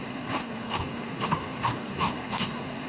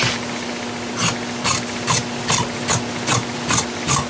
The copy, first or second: first